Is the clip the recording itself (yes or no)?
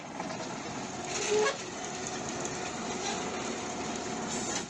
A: yes